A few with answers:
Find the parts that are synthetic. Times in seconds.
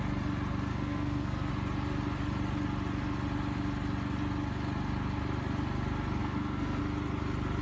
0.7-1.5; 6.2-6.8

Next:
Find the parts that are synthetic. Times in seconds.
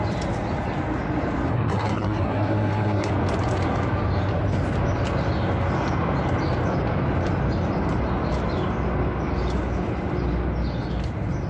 1.5-3.1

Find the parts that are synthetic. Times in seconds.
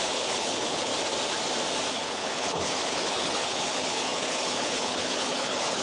0.0-0.9; 1.9-5.8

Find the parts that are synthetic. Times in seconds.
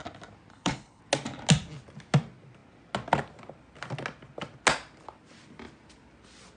0.5-1.0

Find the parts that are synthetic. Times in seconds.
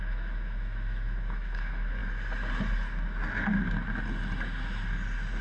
0.0-2.0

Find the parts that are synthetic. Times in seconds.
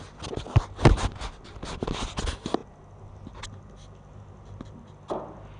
none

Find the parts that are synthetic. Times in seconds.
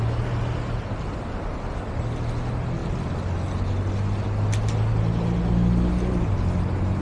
none